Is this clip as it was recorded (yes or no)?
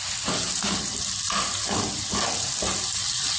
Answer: yes